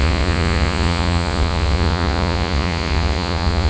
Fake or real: fake